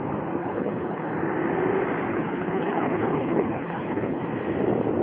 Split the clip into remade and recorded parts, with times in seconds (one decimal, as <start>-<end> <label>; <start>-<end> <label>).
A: 0.0-0.4 recorded; 0.4-1.1 remade; 1.1-2.1 recorded; 2.1-4.2 remade; 4.2-5.0 recorded